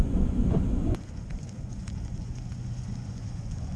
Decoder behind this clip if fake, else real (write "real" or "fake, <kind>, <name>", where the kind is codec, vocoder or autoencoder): fake, vocoder, Vocos